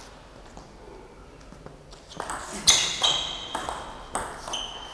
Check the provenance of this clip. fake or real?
real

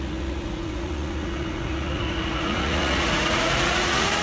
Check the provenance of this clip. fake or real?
fake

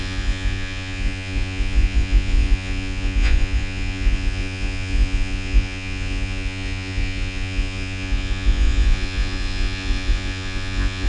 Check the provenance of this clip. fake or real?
fake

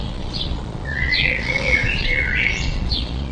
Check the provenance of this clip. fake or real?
fake